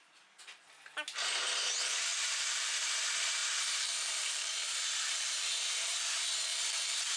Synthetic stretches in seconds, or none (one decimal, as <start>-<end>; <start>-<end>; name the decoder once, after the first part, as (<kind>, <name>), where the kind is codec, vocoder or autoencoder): 2.1-2.7 (vocoder, BigVGAN v2); 3.4-6.1; 6.5-7.2